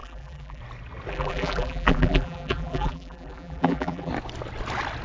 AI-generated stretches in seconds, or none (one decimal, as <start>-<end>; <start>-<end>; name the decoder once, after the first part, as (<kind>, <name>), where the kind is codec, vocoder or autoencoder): 0.0-0.6 (vocoder, BigVGAN v2); 1.1-4.1